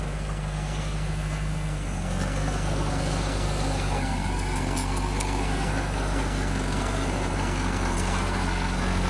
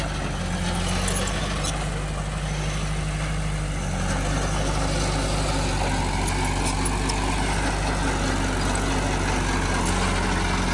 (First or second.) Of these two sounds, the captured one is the second